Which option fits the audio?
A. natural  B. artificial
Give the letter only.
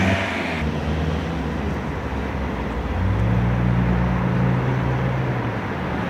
A